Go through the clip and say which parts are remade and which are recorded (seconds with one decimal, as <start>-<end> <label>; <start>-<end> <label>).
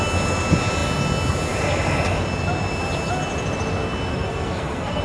0.0-4.1 recorded; 4.1-5.0 remade